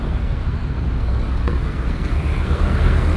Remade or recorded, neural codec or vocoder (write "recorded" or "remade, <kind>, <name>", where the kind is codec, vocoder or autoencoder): remade, codec, SNAC